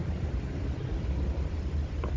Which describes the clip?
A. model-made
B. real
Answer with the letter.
A